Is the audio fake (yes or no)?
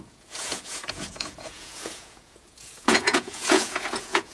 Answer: yes